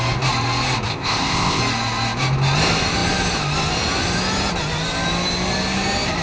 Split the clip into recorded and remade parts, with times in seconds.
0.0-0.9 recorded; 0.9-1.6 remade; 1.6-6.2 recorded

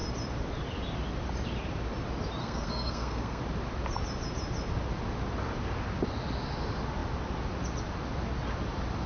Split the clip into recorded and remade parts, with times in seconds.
0.0-2.4 recorded; 2.4-3.4 remade; 3.4-9.1 recorded